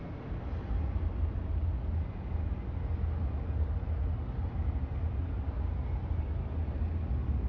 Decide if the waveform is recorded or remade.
recorded